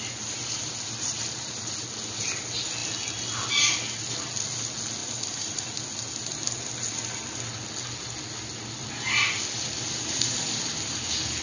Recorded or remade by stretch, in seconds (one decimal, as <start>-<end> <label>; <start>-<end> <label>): 0.0-11.4 recorded